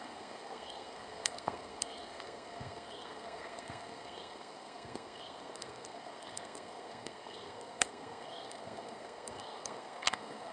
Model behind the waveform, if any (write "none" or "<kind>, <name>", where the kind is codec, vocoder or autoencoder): codec, SNAC